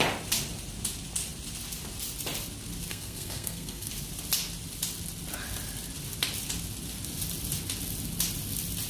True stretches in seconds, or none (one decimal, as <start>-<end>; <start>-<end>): 0.0-2.9; 3.9-8.9